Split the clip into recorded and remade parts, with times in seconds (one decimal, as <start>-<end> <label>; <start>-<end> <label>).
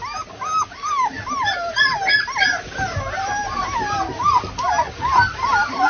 0.0-5.9 recorded